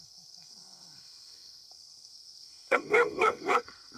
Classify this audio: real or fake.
fake